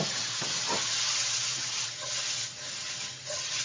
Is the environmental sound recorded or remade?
remade